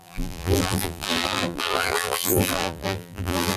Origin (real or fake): fake